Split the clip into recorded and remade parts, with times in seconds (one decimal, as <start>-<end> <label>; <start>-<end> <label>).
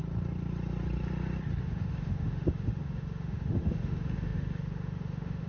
0.0-1.6 recorded; 1.6-5.5 remade